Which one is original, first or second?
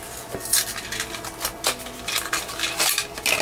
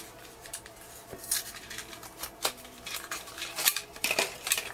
first